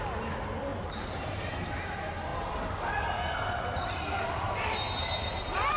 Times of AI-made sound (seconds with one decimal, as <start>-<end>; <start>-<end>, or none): none